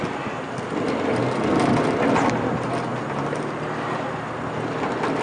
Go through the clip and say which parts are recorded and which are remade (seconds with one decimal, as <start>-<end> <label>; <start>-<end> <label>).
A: 0.0-5.2 recorded